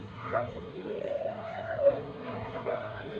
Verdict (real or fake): fake